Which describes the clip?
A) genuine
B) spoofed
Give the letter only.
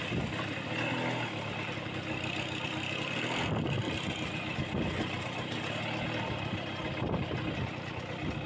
A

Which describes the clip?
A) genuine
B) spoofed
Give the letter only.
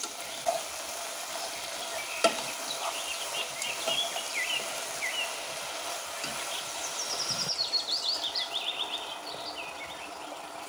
A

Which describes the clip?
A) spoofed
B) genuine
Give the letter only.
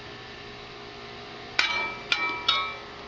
B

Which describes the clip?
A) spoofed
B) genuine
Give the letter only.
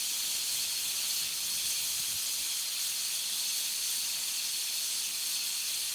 B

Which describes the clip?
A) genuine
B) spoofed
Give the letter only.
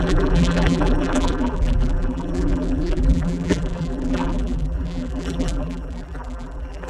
B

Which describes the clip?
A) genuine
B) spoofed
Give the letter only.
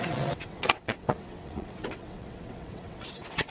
B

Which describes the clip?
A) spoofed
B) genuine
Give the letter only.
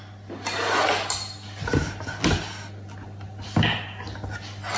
B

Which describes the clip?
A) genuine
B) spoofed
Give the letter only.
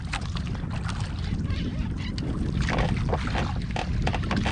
A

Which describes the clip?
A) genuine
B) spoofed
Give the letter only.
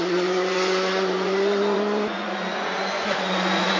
B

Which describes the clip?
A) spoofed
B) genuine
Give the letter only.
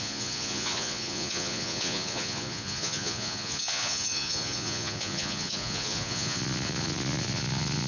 A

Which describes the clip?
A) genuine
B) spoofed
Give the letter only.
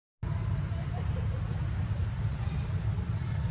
A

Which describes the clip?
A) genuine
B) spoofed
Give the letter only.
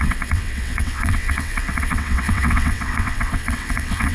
B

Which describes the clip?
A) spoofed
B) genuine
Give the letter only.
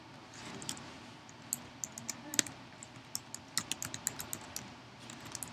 B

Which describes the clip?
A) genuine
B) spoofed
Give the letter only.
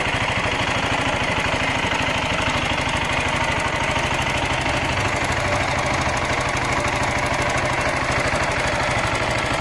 A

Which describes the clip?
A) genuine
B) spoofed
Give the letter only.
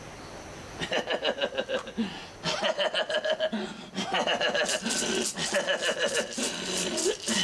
A